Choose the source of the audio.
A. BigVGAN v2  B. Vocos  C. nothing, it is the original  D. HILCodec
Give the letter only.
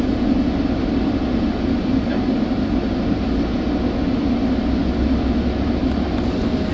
C